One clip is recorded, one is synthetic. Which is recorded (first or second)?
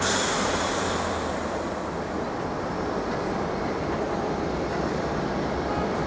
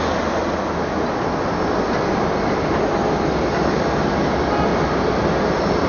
second